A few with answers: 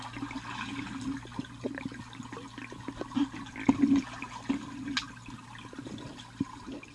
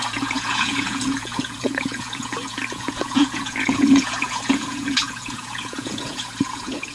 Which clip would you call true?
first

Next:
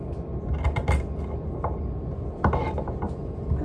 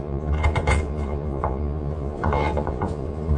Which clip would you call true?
first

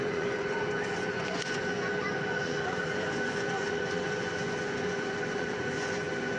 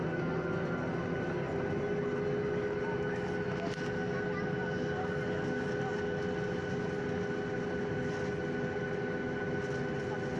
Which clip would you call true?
second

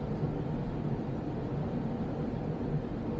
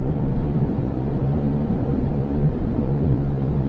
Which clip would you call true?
first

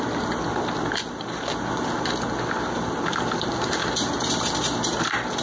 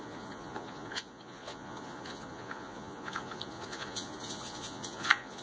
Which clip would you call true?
first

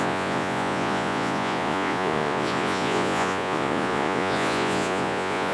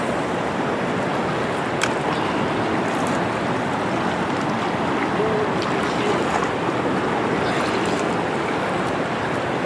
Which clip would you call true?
second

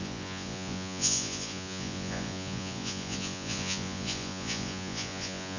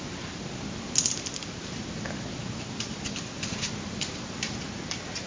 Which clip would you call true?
second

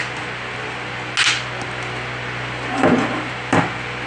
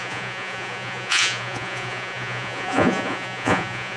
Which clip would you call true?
first